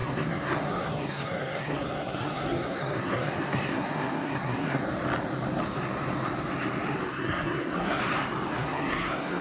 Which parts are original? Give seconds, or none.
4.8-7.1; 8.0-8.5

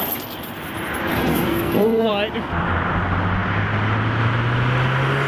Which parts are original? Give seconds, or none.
0.0-1.1; 2.1-5.3

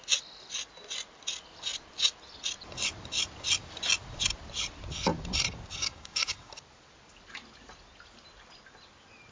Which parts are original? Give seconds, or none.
0.0-5.8; 6.5-9.3

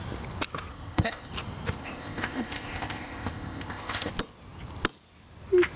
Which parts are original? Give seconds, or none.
0.0-0.7; 1.3-1.8; 4.1-5.8

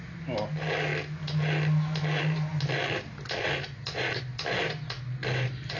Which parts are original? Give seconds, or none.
0.0-5.8